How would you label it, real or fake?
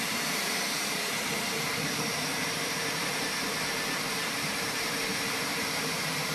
fake